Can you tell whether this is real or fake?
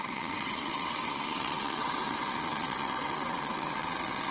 fake